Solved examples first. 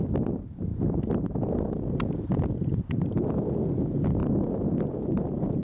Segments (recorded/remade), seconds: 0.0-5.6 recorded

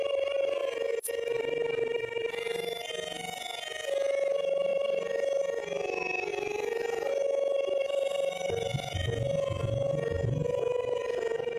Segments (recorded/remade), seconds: 0.0-0.6 recorded; 0.6-2.9 remade; 2.9-6.3 recorded; 6.3-7.1 remade; 7.1-11.6 recorded

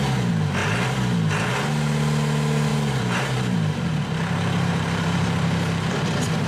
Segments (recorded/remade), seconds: 0.0-2.7 recorded; 2.7-6.5 remade

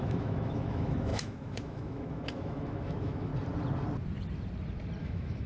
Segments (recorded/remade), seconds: 0.0-3.3 remade; 3.3-5.0 recorded; 5.0-5.5 remade

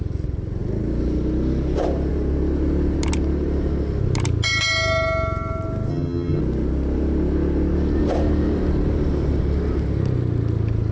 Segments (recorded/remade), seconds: 0.0-5.9 recorded; 5.9-6.4 remade; 6.4-10.9 recorded

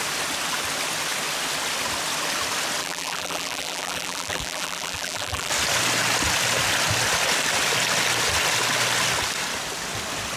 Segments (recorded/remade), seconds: 0.0-2.8 recorded; 2.8-5.5 remade; 5.5-10.4 recorded